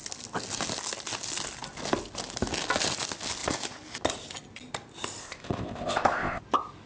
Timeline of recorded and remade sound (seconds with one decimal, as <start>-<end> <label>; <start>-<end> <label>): 0.0-5.2 recorded; 5.2-6.4 remade; 6.4-6.9 recorded